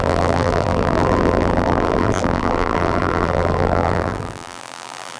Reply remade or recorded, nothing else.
remade